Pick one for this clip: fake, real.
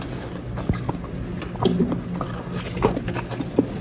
real